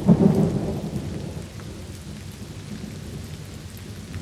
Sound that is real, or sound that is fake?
real